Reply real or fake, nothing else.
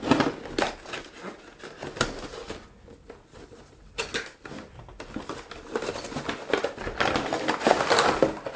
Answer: real